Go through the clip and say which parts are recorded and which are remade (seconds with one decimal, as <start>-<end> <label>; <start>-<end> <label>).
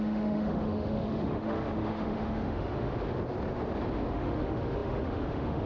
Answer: 0.0-2.9 remade; 2.9-4.1 recorded; 4.1-5.7 remade